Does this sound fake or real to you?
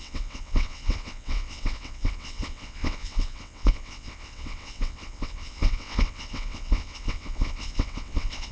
fake